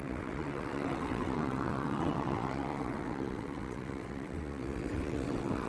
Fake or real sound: fake